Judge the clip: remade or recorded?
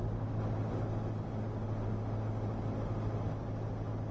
recorded